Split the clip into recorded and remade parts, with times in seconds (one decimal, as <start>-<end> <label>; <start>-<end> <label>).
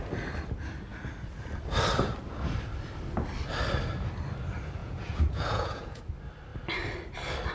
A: 0.0-4.8 recorded; 4.8-6.0 remade; 6.0-7.5 recorded